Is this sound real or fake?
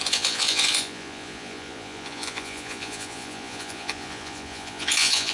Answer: fake